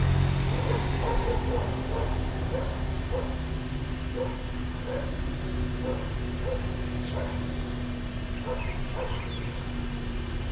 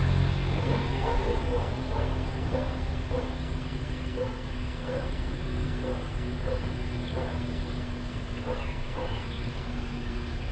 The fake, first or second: second